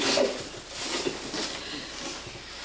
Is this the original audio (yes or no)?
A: yes